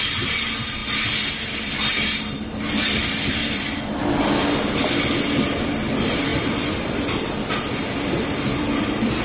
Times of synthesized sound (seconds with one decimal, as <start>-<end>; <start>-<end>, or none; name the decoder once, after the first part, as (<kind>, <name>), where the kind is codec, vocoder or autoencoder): 3.0-4.0 (vocoder, BigVGAN v2); 6.3-9.2